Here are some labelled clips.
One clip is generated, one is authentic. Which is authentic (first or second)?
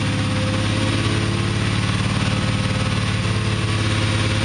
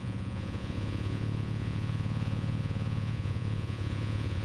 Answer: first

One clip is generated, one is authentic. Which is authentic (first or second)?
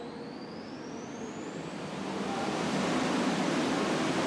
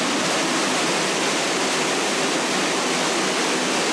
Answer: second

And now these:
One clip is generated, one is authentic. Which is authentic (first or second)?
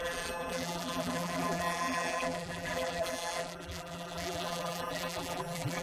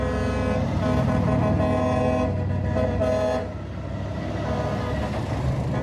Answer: second